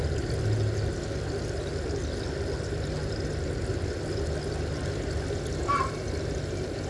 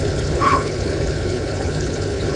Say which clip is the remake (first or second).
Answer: second